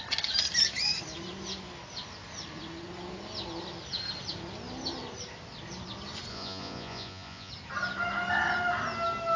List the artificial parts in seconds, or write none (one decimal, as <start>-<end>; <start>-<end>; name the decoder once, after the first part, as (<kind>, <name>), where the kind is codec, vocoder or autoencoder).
6.3-7.5 (vocoder, Vocos)